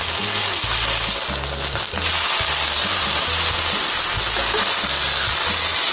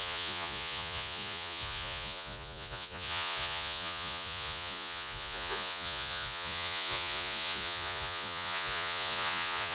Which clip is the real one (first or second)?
first